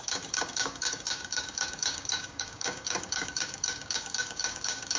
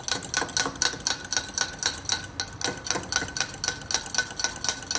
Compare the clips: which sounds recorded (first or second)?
second